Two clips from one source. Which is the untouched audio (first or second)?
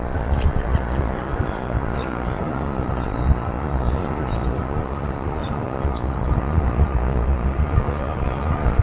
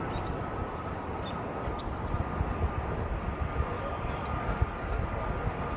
second